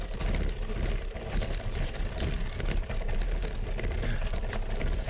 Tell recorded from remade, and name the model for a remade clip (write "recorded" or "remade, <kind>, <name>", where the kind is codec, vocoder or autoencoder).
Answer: recorded